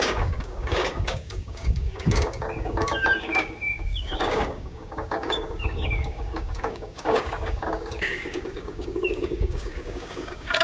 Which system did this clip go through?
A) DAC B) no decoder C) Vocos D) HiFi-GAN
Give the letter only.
A